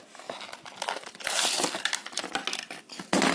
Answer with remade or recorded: recorded